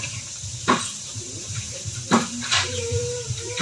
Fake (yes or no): yes